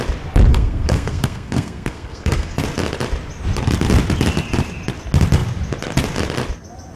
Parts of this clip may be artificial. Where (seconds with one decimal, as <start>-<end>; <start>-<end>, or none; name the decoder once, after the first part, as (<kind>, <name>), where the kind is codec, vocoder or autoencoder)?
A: 0.5-2.6 (codec, SNAC)